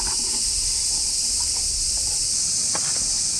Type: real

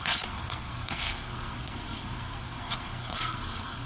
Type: fake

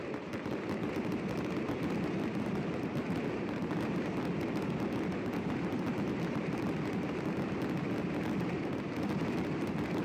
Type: real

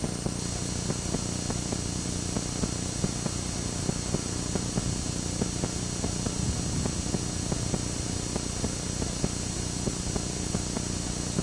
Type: real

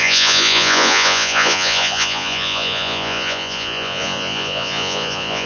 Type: fake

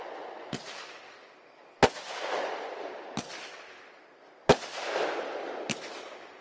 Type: real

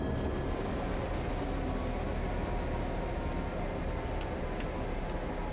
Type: real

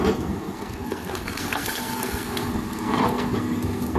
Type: fake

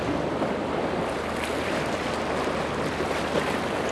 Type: fake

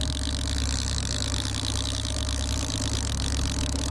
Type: real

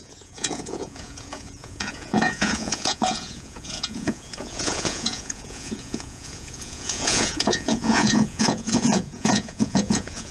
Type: fake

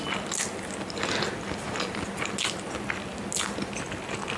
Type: real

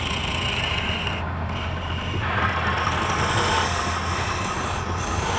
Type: real